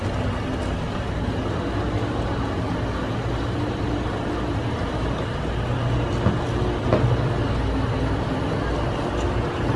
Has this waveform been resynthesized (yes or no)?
no